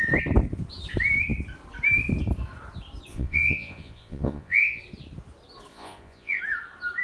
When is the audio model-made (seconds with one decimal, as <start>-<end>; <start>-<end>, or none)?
3.1-4.8; 5.7-6.4